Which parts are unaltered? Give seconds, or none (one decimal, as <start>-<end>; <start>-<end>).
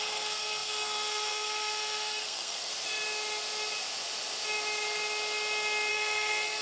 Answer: 2.7-5.9